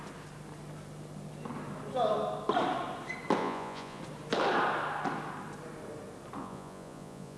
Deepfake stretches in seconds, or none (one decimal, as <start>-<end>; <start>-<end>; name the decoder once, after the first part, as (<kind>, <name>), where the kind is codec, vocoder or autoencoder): 3.4-4.0 (vocoder, Vocos); 6.4-7.4

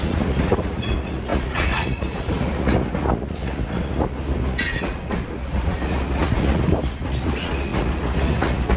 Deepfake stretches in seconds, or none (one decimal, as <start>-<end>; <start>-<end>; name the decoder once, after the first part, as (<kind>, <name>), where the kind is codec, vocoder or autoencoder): 0.0-8.8 (vocoder, Vocos)

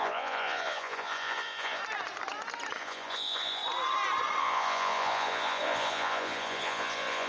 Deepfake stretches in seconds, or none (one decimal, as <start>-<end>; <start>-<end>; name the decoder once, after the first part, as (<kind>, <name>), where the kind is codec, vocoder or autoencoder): 0.0-1.8 (vocoder, Vocos); 2.8-3.6; 4.4-7.3

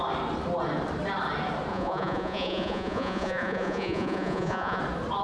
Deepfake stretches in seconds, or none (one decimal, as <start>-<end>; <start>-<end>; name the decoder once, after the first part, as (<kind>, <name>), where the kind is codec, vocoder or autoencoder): 1.7-4.8 (vocoder, Vocos)

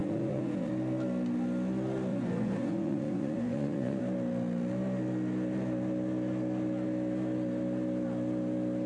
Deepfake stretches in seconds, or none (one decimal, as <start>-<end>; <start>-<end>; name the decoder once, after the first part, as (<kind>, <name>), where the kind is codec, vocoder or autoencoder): 0.0-0.7 (vocoder, Vocos); 2.1-4.0

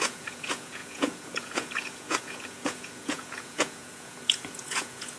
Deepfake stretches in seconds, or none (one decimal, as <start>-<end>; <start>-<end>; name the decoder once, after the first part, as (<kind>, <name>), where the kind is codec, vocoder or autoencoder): 0.0-5.2 (vocoder, Vocos)

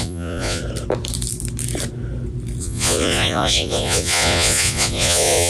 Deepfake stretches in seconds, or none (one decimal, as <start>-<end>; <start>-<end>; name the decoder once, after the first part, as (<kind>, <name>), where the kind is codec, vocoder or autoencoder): 0.0-0.6 (vocoder, Vocos); 2.6-5.5

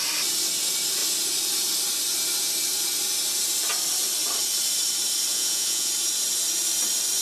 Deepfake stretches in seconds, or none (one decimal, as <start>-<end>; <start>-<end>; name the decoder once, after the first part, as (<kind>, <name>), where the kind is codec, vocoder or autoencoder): 5.3-5.9 (vocoder, Vocos)